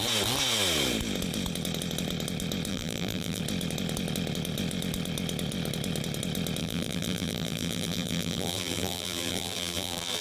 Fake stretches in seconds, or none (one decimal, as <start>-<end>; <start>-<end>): 2.7-3.4; 6.6-10.2